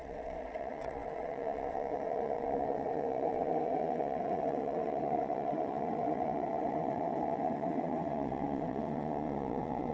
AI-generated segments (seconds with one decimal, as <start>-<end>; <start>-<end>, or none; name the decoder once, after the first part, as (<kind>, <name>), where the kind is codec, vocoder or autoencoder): 0.0-9.9 (vocoder, WaveNeXt)